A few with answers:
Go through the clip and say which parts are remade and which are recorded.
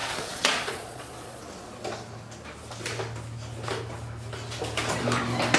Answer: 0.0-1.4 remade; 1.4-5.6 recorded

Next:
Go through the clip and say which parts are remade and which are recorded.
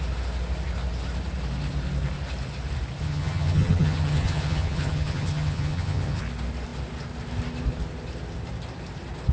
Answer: 0.0-3.0 recorded; 3.0-6.2 remade; 6.2-9.3 recorded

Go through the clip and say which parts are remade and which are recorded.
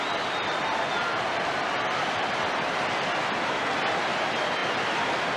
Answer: 0.0-5.4 recorded